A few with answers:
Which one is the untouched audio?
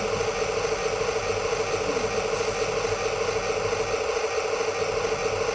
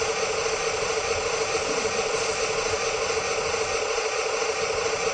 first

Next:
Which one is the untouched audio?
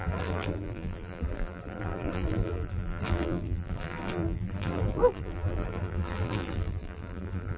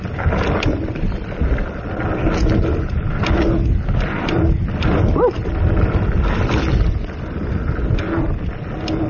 second